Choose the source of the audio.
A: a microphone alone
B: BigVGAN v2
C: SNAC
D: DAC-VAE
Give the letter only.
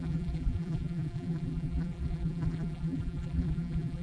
B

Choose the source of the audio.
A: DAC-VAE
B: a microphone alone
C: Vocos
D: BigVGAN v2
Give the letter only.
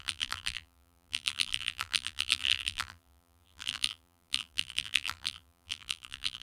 D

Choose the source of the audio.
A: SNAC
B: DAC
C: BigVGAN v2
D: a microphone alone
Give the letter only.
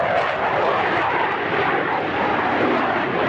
D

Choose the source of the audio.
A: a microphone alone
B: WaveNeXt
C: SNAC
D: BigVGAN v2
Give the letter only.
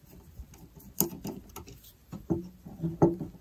A